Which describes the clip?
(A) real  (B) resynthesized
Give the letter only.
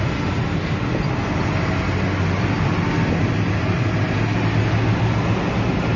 A